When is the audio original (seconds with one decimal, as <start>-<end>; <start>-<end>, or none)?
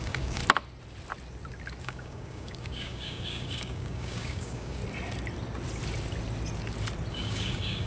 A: 0.4-1.8; 4.8-7.1